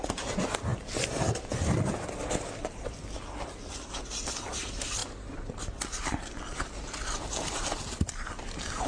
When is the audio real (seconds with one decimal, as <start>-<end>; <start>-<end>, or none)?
0.0-8.9